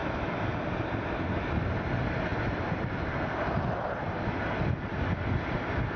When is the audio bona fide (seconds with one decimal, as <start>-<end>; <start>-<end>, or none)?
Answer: 0.0-6.0

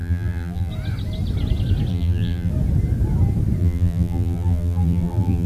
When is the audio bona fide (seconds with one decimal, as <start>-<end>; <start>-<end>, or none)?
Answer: 0.7-1.9; 2.5-3.6

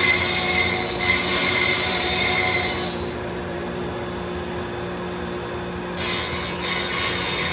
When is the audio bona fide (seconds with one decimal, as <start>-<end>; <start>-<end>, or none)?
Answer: 0.0-1.3; 3.9-7.5

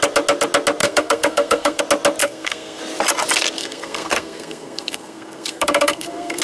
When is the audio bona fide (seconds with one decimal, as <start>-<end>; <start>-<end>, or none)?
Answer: 0.0-0.8; 1.8-2.2; 2.8-3.6

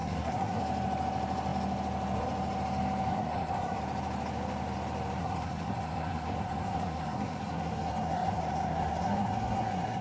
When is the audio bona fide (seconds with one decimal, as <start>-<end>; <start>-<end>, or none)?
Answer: 0.6-3.1; 3.8-5.2

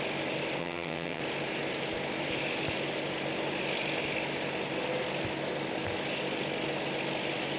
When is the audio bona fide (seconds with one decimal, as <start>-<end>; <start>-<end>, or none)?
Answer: 0.0-0.6; 1.2-7.6

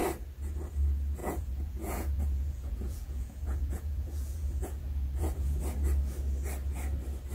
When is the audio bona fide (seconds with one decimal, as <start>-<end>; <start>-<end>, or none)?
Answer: 0.0-1.2; 5.6-7.3

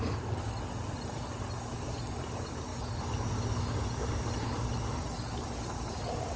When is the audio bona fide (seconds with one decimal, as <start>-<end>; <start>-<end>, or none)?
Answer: 0.0-6.4